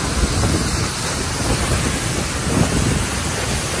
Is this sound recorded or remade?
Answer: recorded